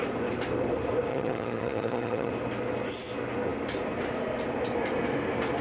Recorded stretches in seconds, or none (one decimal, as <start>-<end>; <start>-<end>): 0.0-1.1; 2.3-5.6